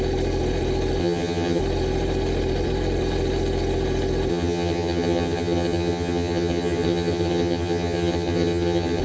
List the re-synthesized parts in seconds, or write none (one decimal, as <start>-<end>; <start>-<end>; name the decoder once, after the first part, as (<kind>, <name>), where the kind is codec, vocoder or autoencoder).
1.0-1.6 (vocoder, HiFi-GAN); 4.3-9.0